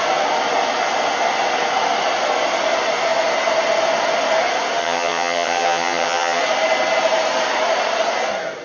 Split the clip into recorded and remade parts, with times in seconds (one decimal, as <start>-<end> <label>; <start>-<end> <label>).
0.0-4.8 recorded; 4.8-6.4 remade; 6.4-8.6 recorded